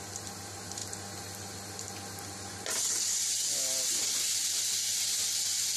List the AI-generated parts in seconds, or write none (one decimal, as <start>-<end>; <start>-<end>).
none